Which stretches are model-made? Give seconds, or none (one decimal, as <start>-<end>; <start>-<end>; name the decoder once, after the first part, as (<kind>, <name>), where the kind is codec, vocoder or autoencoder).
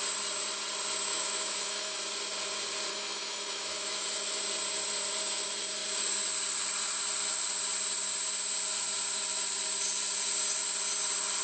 1.1-2.0 (autoencoder, DAC-VAE); 2.9-4.4